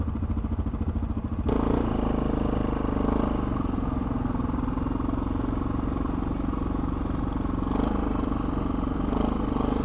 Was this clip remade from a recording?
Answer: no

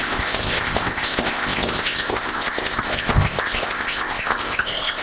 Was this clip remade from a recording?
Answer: yes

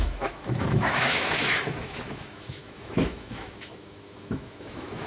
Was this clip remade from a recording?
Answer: yes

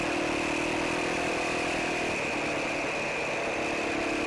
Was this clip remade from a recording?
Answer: no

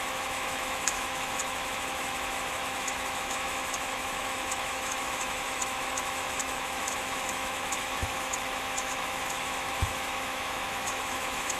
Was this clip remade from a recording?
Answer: yes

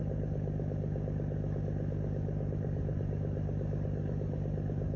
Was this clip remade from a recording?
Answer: no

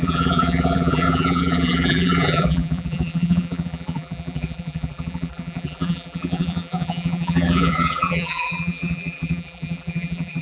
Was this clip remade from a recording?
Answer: yes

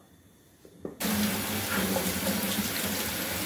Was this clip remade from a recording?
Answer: no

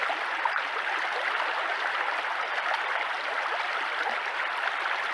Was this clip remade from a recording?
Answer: no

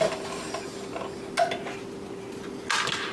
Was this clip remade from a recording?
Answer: no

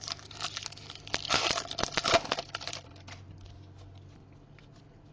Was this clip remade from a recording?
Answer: no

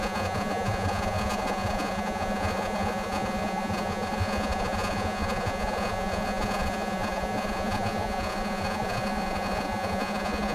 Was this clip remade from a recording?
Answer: yes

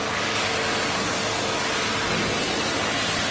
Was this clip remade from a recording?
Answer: no